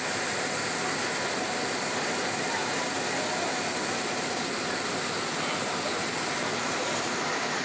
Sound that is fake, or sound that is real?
real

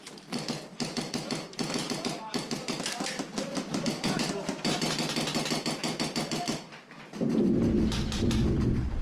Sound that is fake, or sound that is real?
real